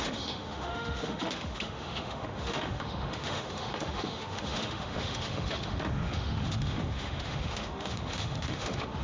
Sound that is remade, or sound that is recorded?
remade